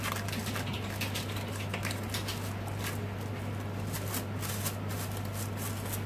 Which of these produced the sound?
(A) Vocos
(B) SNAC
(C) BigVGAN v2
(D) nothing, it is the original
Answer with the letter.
D